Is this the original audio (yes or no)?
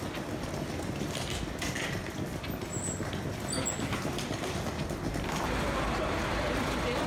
yes